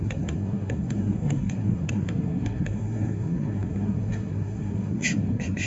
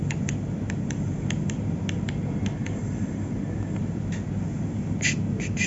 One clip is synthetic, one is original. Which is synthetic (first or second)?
first